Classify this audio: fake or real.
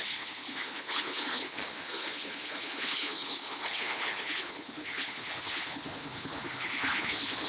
fake